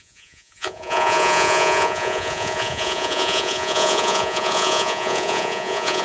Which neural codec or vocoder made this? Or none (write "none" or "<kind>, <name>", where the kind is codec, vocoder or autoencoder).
vocoder, Vocos